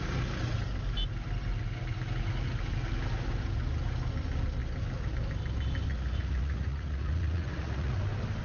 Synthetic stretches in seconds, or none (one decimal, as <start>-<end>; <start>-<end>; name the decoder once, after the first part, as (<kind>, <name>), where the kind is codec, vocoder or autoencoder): 5.9-8.0 (vocoder, Vocos)